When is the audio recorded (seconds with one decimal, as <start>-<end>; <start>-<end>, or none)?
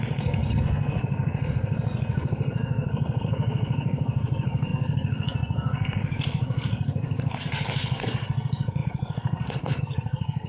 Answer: none